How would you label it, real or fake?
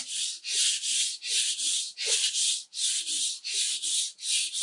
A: fake